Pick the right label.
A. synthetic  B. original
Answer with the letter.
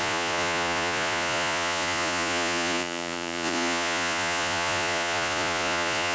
A